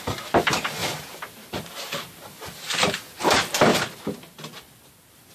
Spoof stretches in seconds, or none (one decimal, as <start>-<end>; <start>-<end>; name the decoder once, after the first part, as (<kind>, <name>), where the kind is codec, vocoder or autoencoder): 0.8-3.3 (vocoder, BigVGAN v2)